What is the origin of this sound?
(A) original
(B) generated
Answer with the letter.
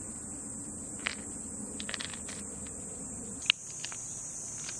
A